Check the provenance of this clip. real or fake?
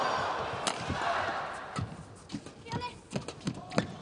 real